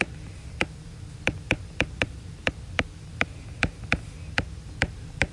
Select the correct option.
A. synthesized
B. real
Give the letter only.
B